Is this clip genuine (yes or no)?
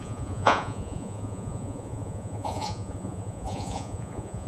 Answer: no